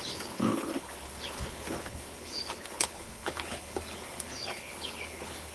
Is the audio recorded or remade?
remade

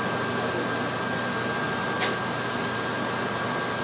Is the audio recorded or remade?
recorded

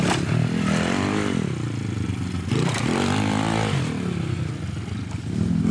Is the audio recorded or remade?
recorded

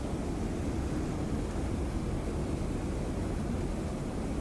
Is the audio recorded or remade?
recorded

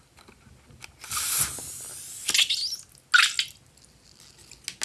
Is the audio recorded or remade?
recorded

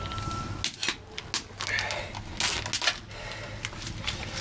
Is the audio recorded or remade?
recorded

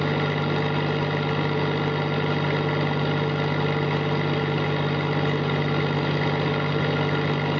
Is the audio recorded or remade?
recorded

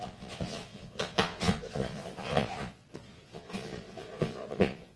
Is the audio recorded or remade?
remade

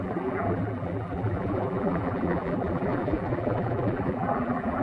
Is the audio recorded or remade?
remade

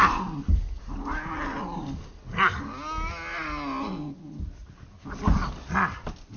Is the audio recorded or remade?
recorded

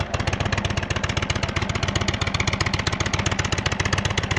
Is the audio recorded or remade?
recorded